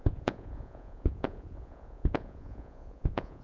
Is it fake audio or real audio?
fake